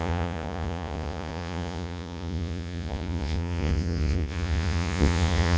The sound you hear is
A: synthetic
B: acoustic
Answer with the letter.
A